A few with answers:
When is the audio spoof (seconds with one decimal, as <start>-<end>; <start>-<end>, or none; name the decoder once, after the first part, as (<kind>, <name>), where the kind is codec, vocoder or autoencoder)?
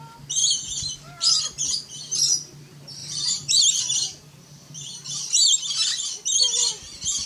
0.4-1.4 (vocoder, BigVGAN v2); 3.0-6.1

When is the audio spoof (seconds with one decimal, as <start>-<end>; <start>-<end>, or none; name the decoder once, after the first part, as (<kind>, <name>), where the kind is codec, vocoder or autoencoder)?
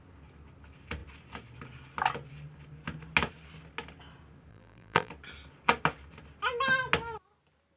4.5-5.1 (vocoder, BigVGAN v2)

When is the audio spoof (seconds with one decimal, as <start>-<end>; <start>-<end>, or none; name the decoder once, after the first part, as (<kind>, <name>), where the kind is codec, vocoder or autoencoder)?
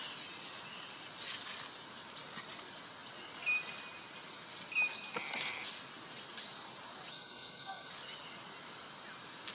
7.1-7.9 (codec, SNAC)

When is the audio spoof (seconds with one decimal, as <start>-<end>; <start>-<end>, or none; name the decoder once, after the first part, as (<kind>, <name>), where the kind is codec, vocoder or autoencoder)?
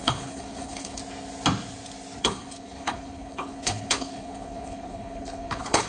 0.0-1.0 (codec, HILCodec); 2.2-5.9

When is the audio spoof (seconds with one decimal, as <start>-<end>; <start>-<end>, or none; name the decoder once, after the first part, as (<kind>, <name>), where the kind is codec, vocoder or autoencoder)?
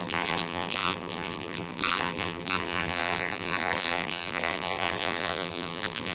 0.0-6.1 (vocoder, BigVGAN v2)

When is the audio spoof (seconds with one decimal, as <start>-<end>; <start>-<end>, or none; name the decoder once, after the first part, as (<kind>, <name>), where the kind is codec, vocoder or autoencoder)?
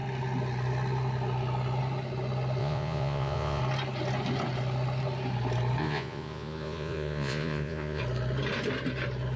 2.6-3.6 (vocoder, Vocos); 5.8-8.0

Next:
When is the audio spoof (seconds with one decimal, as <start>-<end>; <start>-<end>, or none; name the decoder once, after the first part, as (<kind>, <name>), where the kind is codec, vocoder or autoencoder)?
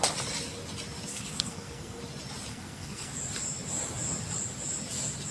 1.1-2.0 (codec, SNAC); 2.5-3.2